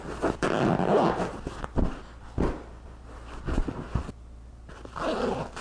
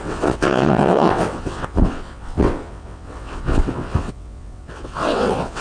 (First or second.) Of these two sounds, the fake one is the second